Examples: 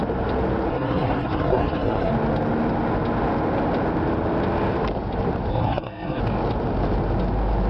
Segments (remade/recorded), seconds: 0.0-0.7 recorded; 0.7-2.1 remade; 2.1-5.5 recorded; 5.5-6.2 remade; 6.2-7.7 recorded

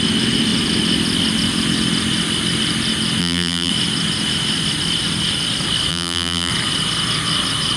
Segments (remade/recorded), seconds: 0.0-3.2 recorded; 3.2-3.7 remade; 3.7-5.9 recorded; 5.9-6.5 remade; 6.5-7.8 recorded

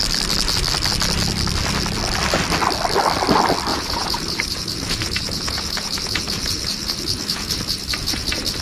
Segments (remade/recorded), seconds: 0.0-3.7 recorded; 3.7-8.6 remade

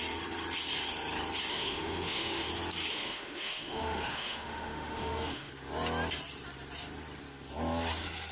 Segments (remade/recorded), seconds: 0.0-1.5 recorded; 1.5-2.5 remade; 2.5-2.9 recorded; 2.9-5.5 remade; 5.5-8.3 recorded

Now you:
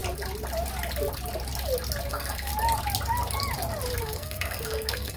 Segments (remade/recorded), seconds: 0.0-2.1 recorded; 2.1-2.5 remade; 2.5-4.0 recorded; 4.0-5.2 remade

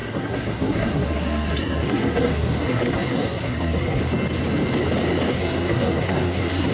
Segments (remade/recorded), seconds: 0.0-4.0 remade; 4.0-5.3 recorded; 5.3-6.7 remade

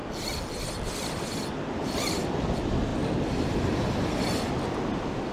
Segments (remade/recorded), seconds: 0.0-5.3 recorded